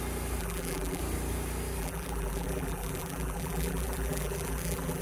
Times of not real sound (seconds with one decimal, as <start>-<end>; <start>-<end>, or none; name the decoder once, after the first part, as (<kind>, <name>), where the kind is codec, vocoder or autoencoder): 0.4-1.0 (vocoder, BigVGAN v2); 1.8-5.0